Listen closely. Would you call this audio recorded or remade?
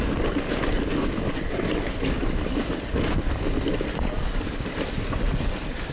recorded